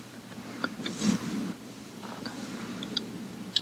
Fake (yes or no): yes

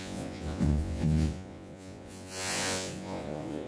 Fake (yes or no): yes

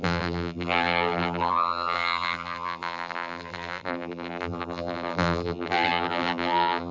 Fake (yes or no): yes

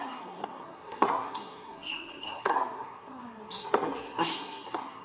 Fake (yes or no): yes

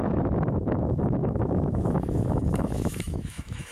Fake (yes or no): yes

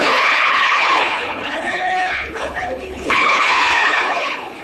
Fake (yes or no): yes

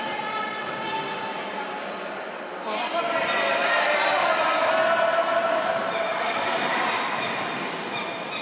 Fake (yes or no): no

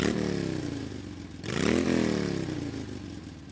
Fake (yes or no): no